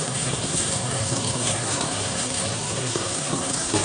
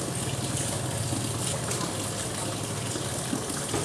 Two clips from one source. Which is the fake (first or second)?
first